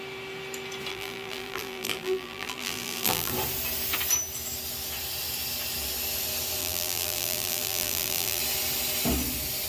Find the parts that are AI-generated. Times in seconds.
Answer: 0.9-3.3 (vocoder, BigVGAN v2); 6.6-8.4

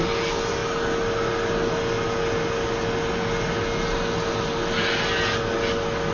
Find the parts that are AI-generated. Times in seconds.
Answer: none

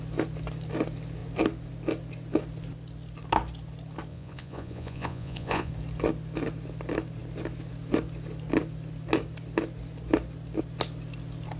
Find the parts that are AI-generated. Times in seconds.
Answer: 4.1-5.7 (vocoder, Vocos)